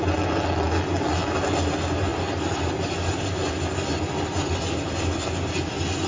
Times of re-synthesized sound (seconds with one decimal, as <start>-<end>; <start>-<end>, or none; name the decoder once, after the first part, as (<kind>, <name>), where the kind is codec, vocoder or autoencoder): none